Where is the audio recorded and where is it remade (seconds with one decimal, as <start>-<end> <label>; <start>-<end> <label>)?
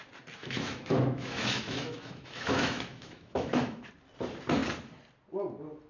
0.0-0.4 recorded; 0.4-3.9 remade; 3.9-5.9 recorded